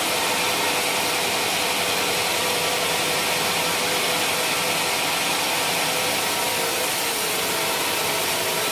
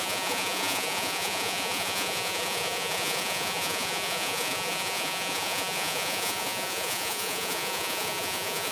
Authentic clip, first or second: first